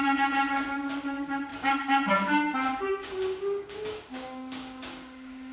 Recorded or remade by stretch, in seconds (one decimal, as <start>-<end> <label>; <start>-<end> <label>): 0.0-5.5 remade